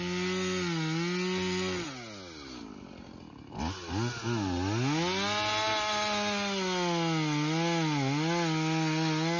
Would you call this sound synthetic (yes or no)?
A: no